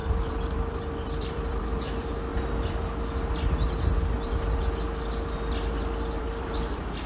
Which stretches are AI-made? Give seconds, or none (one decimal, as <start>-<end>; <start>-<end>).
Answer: 0.0-2.3; 6.2-7.1